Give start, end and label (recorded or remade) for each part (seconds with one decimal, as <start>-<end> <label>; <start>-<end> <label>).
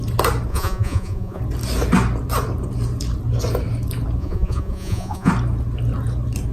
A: 0.0-0.5 recorded; 0.5-1.4 remade; 1.4-4.2 recorded; 4.2-5.3 remade; 5.3-6.5 recorded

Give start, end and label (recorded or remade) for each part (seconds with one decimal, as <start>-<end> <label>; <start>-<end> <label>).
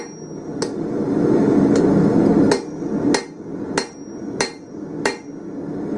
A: 0.0-0.5 recorded; 0.5-1.8 remade; 1.8-4.2 recorded; 4.2-5.2 remade; 5.2-6.0 recorded